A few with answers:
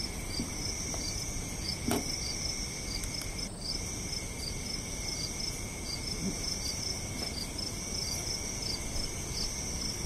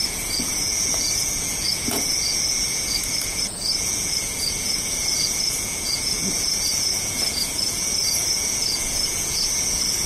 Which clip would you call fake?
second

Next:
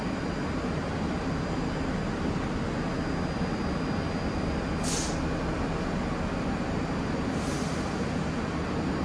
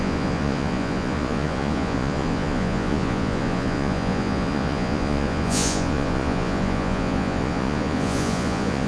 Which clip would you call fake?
second